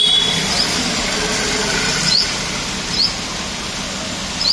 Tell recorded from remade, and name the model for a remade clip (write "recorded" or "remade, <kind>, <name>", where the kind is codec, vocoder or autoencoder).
recorded